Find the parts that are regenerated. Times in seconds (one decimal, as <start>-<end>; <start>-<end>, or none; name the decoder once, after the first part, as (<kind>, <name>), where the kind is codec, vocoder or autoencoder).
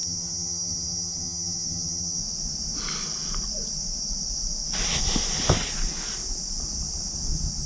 0.0-2.2 (vocoder, HiFi-GAN)